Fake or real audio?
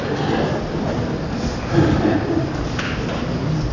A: real